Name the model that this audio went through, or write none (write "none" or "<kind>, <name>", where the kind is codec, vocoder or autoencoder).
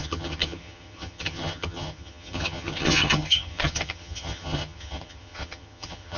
vocoder, HiFi-GAN